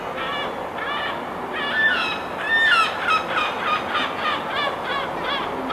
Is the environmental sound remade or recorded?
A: recorded